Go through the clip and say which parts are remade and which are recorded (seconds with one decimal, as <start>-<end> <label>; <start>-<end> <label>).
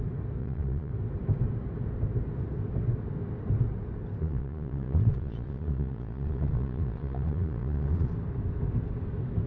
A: 0.0-0.4 recorded; 0.4-0.9 remade; 0.9-4.2 recorded; 4.2-8.1 remade; 8.1-9.5 recorded